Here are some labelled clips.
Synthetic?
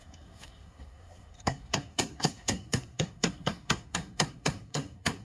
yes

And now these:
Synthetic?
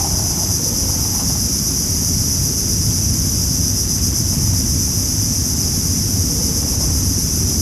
no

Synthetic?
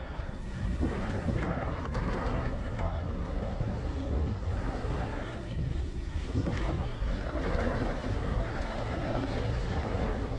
yes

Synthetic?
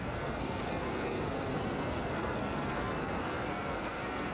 yes